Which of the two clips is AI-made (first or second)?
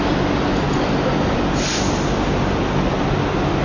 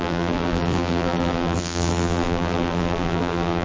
second